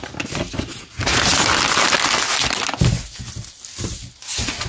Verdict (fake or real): real